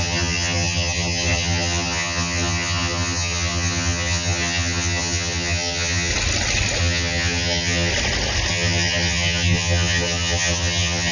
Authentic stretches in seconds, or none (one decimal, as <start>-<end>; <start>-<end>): 6.1-6.8; 7.9-8.5